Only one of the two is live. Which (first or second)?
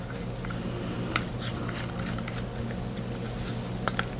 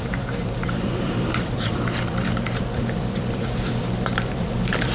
first